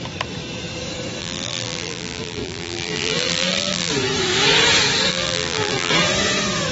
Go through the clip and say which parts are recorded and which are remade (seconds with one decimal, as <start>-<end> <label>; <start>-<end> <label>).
0.0-1.2 recorded; 1.2-3.9 remade; 3.9-5.1 recorded; 5.1-5.9 remade; 5.9-6.7 recorded